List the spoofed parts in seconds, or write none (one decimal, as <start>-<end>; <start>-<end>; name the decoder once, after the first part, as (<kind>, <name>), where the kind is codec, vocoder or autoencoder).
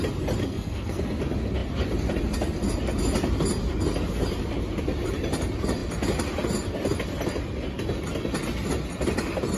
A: 0.4-1.0 (codec, SNAC)